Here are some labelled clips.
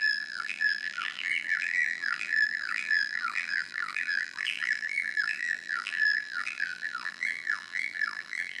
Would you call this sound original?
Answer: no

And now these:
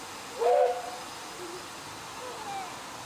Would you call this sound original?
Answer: yes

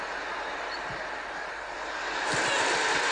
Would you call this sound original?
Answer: yes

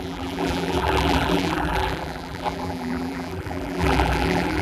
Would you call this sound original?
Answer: no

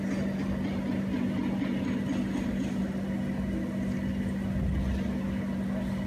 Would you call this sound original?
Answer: yes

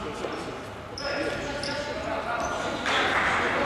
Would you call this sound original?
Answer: yes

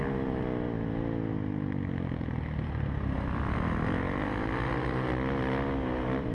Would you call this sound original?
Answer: yes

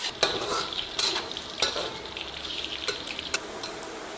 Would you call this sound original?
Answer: no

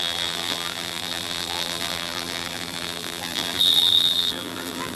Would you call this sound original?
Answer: no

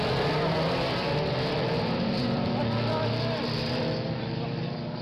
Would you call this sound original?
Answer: no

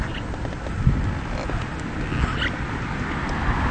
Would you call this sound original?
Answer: yes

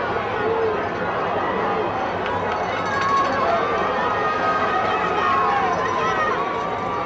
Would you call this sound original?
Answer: yes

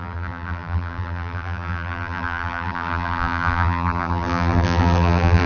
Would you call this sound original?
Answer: no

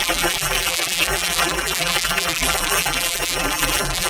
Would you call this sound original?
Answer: no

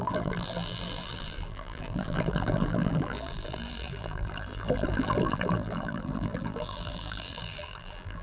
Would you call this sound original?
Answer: no